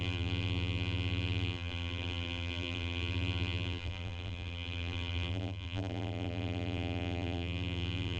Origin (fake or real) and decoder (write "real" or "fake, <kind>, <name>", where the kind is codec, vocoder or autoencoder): fake, vocoder, BigVGAN v2